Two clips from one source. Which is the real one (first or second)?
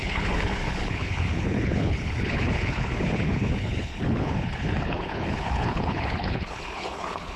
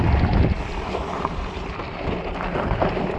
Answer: second